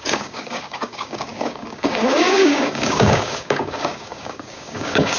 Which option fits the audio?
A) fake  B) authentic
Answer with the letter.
A